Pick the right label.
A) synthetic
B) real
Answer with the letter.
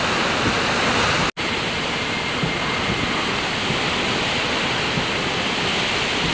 B